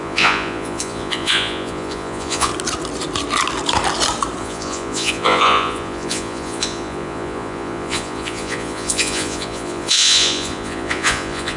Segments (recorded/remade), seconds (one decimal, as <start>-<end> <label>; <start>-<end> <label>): 0.0-2.5 remade; 2.5-4.4 recorded; 4.4-11.6 remade